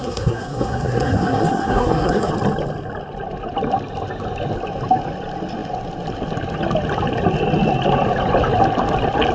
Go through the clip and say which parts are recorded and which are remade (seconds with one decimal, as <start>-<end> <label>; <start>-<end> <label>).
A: 0.0-2.3 remade; 2.3-9.3 recorded